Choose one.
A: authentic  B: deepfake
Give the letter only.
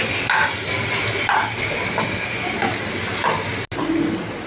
A